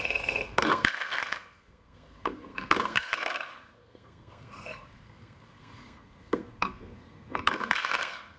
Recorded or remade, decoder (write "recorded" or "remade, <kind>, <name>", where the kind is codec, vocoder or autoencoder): remade, codec, SNAC